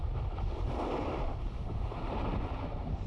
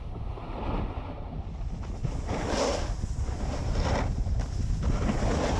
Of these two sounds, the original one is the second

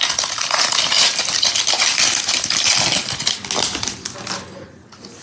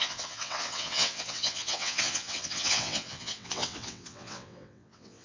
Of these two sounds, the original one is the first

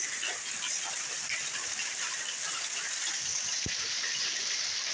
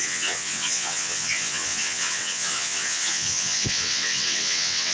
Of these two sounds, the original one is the first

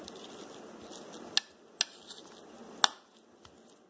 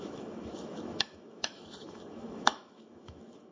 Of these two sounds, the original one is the first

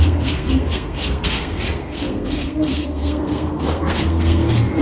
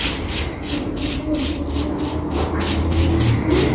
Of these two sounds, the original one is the second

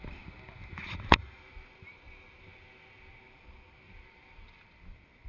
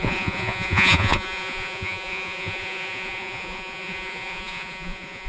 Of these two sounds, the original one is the first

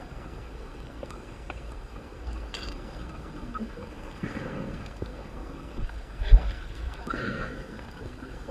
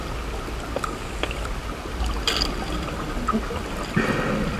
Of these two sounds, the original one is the second